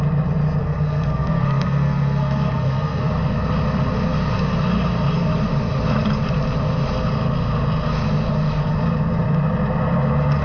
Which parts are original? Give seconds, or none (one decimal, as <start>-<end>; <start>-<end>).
0.0-0.6; 3.1-10.4